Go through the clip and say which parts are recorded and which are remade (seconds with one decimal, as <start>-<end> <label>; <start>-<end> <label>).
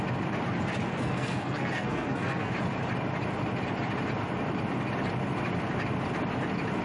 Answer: 0.0-0.9 recorded; 0.9-2.5 remade; 2.5-6.8 recorded